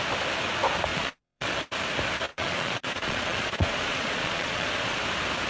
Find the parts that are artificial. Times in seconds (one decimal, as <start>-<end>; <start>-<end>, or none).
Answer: 0.9-1.5; 2.3-5.0